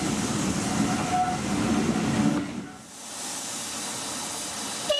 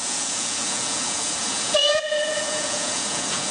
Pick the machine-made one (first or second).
second